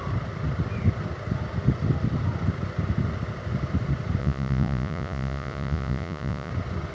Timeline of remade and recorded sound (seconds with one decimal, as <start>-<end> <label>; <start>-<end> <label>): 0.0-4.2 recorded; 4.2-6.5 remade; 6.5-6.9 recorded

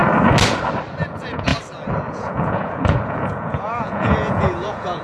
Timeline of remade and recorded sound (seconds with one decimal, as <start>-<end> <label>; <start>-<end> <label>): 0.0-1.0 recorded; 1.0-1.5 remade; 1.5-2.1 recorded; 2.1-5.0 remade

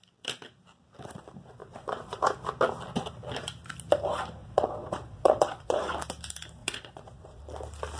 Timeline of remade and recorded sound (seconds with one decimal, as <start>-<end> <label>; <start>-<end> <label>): 0.0-1.6 recorded; 1.6-2.2 remade; 2.2-4.4 recorded; 4.4-5.8 remade; 5.8-6.6 recorded; 6.6-7.4 remade; 7.4-8.0 recorded